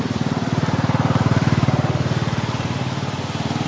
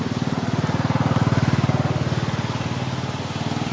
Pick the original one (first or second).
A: second